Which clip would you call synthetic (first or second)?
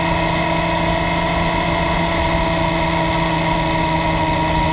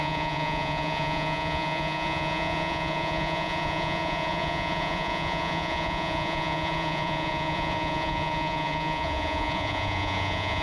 second